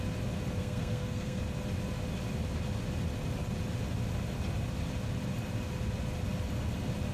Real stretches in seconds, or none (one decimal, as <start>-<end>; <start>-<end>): 0.0-0.6; 1.4-7.1